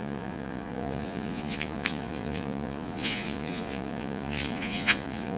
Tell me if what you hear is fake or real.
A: fake